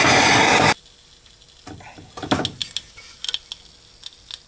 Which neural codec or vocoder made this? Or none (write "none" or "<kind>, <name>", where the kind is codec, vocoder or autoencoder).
none